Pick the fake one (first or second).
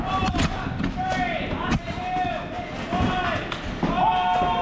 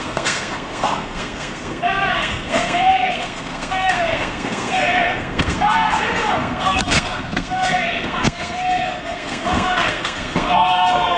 second